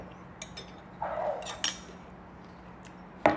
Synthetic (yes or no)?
no